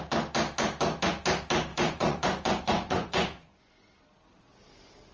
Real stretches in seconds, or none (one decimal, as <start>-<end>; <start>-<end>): 0.0-1.7; 4.0-5.1